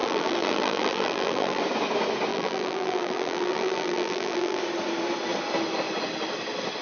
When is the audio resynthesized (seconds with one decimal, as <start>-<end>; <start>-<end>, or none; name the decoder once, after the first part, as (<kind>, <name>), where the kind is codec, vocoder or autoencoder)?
0.0-1.6 (vocoder, BigVGAN v2); 2.3-4.6